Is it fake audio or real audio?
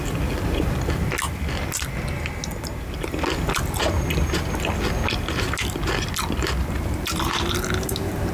real